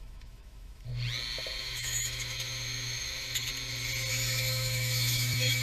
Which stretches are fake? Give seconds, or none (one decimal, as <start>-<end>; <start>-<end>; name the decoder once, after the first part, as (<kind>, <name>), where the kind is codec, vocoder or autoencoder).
0.0-0.9 (autoencoder, DAC-VAE); 1.6-3.5; 4.1-5.6